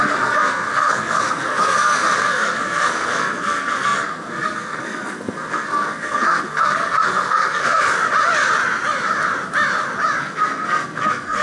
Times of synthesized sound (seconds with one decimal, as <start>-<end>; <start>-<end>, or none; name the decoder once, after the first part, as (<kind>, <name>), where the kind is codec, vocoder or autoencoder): 0.0-7.9 (codec, SNAC); 10.2-11.4